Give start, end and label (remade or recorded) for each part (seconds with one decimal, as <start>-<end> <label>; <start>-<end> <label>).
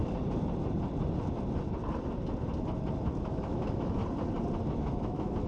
0.0-3.3 recorded; 3.3-4.0 remade; 4.0-4.7 recorded; 4.7-5.5 remade